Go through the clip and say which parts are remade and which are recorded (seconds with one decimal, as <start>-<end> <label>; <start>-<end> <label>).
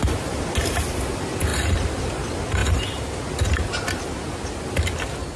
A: 0.0-2.6 recorded; 2.6-3.3 remade; 3.3-5.4 recorded